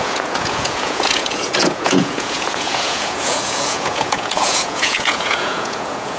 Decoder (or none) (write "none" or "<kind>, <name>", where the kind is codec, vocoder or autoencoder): vocoder, Vocos